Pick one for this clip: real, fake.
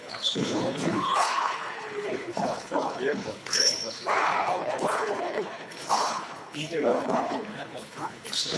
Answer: fake